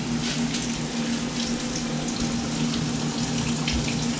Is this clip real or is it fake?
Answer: real